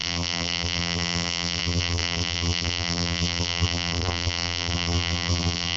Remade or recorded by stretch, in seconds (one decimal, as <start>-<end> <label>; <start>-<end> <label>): 0.0-5.8 remade